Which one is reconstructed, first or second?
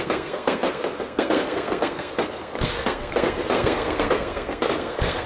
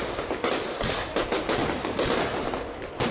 first